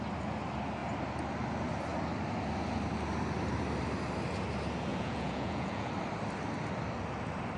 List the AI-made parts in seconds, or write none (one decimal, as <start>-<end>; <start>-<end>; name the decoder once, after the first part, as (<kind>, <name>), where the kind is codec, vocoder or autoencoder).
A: 4.9-5.9 (vocoder, Vocos)